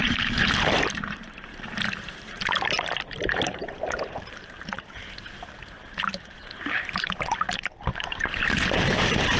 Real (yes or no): no